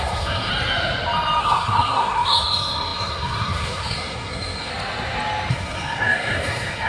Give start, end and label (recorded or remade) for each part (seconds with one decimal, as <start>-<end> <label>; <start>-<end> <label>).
0.0-0.5 remade; 0.5-1.4 recorded; 1.4-4.7 remade; 4.7-5.5 recorded; 5.5-6.9 remade